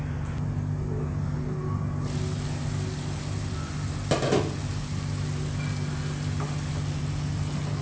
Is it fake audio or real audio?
real